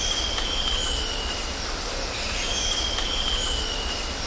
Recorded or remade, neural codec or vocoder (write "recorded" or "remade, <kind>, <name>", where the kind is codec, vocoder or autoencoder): recorded